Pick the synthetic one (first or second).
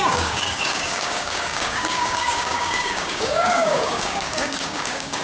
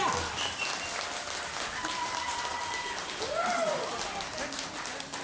first